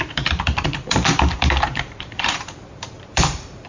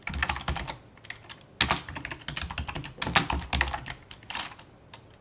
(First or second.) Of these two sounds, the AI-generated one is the first